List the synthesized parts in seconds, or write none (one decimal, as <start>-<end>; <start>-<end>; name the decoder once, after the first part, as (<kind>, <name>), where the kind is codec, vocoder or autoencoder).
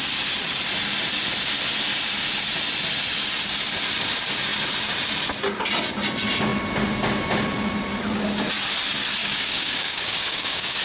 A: 9.2-10.8 (codec, DAC)